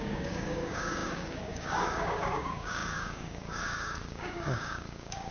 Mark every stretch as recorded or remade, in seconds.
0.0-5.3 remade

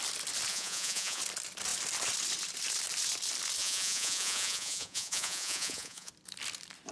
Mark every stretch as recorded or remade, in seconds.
0.0-0.5 recorded; 0.5-1.2 remade; 1.2-3.6 recorded; 3.6-6.1 remade; 6.1-6.9 recorded

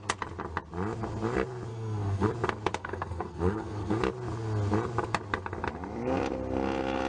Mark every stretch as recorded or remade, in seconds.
0.0-1.7 recorded; 1.7-2.3 remade; 2.3-2.8 recorded; 2.8-4.0 remade; 4.0-7.1 recorded

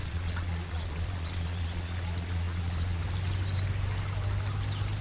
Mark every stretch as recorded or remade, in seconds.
0.0-3.0 remade; 3.0-5.0 recorded

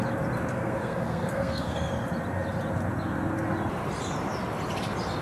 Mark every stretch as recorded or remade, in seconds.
0.0-0.5 recorded; 0.5-1.9 remade; 1.9-5.2 recorded

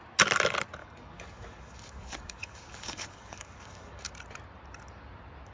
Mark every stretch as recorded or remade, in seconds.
0.0-0.8 recorded; 0.8-4.1 remade; 4.1-5.5 recorded

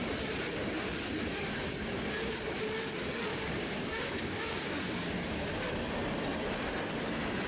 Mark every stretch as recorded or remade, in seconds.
0.0-3.3 recorded; 3.3-5.5 remade; 5.5-7.5 recorded

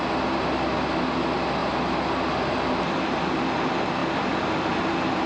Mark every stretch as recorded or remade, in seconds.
0.0-5.3 recorded